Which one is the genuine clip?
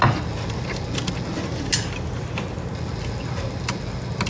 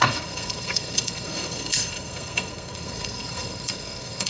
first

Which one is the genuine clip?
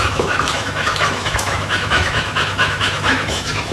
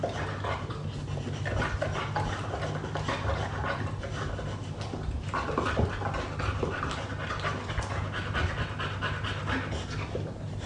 second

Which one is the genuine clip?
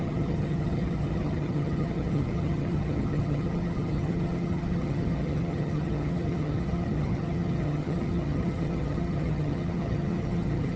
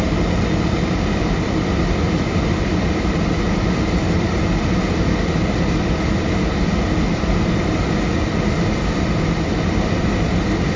second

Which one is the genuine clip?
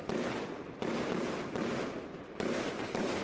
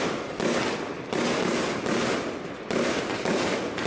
second